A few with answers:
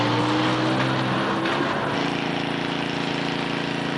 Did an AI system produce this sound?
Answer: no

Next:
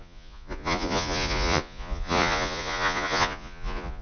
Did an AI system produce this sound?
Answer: yes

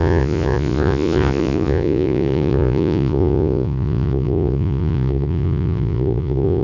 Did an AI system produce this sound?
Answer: yes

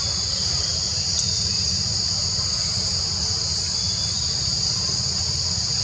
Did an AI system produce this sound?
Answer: no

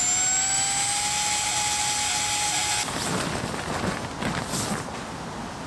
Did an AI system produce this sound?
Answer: no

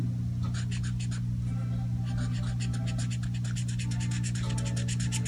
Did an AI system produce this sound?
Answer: no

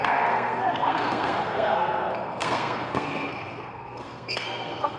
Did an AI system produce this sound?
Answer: yes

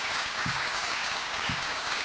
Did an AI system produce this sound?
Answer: yes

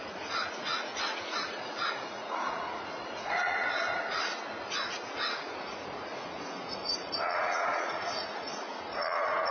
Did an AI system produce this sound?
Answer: yes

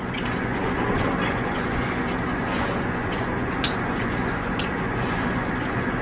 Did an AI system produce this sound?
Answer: yes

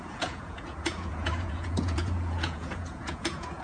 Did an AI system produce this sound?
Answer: yes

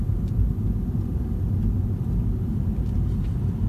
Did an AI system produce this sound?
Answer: no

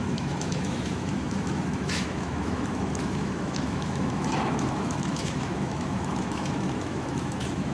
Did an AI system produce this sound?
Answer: yes